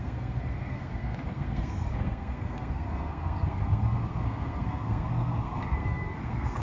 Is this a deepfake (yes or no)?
yes